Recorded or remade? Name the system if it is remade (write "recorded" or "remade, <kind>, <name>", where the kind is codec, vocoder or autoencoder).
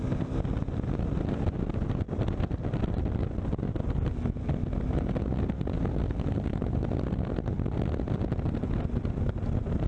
recorded